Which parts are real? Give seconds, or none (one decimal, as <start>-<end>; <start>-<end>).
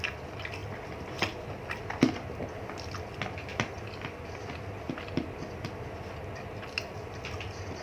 0.0-7.8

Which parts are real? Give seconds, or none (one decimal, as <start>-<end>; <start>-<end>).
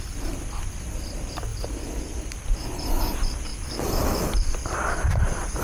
0.0-3.5; 4.5-5.6